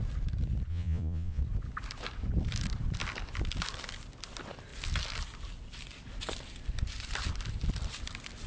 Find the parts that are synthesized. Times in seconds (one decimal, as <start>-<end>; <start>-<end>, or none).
0.7-1.4